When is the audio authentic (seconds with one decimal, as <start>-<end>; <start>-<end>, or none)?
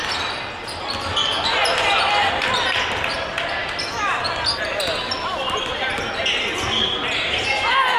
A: 0.0-8.0